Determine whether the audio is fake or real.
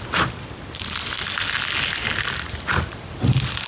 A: real